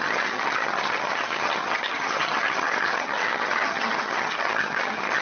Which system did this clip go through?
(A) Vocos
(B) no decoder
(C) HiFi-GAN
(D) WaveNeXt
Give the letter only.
C